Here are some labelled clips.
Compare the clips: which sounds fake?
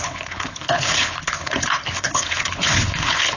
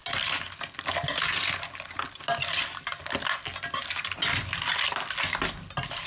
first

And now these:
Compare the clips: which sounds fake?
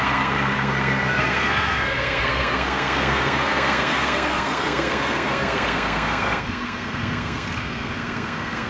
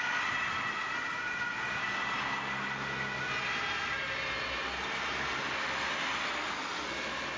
first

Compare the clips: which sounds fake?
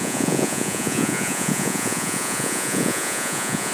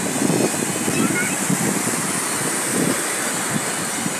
first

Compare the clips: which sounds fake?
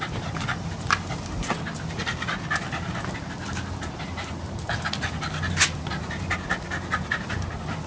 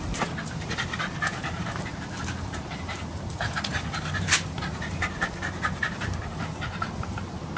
second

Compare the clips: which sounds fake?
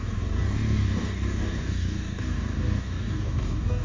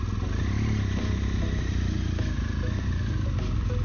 first